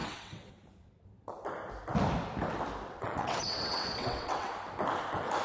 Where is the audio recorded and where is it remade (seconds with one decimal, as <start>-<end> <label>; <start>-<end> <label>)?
0.0-0.5 remade; 0.5-2.9 recorded; 2.9-4.5 remade; 4.5-5.4 recorded